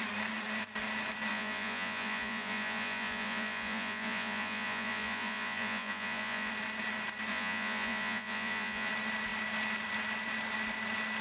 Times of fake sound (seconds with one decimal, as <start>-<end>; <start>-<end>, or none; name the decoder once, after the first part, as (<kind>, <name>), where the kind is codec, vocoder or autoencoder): 1.3-6.5 (vocoder, Vocos); 7.3-8.9